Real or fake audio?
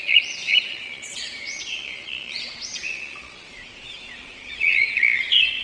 fake